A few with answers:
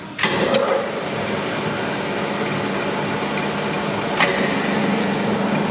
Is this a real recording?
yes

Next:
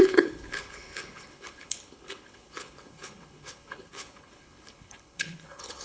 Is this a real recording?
no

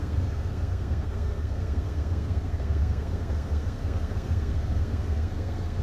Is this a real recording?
no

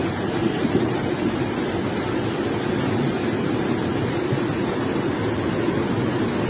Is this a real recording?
yes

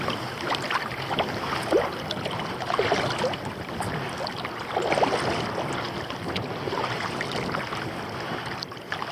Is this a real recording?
yes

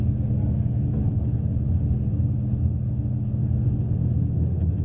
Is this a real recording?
yes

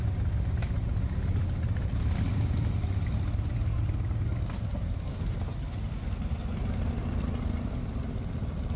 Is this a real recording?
yes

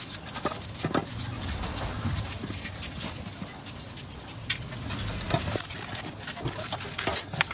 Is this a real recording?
yes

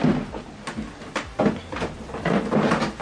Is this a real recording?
yes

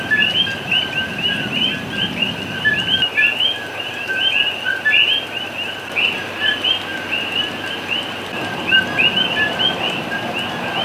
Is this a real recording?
yes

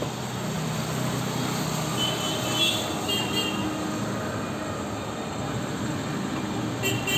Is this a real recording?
yes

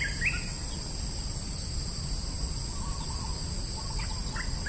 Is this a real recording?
yes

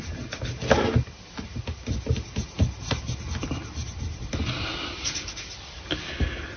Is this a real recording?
yes